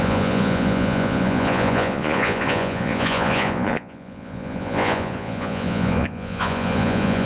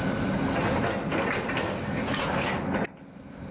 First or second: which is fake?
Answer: first